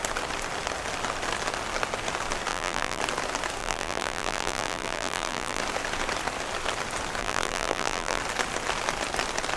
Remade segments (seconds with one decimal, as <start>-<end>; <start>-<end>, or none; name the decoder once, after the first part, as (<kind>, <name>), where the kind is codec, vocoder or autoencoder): 2.5-3.0 (vocoder, BigVGAN v2); 3.6-5.6; 7.2-8.2